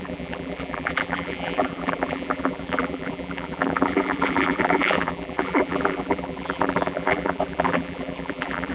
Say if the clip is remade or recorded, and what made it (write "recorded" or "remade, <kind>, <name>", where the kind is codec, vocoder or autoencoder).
remade, vocoder, BigVGAN v2